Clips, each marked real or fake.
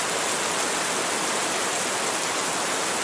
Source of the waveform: real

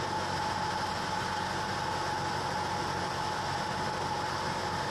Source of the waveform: real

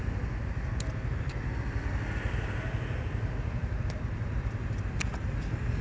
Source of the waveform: real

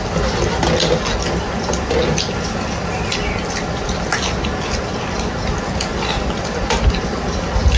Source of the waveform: real